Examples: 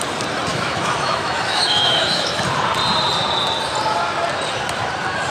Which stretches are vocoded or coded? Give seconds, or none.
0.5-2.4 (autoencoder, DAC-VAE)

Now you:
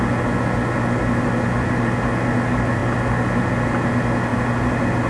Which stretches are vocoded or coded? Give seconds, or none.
none